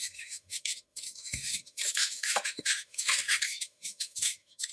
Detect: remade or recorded remade